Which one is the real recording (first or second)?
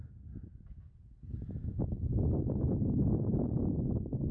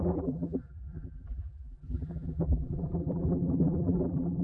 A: first